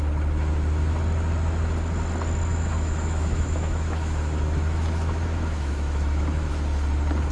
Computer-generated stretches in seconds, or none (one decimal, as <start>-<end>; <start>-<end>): 2.5-6.5